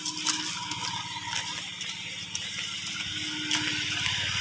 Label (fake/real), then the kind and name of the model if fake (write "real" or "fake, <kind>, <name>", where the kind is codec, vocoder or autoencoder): real